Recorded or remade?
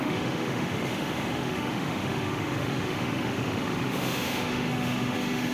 remade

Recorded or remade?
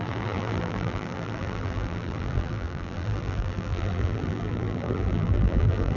remade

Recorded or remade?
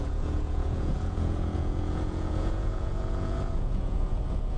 remade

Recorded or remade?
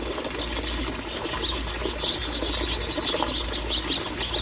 recorded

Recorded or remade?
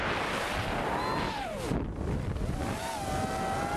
recorded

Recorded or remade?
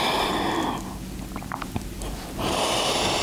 recorded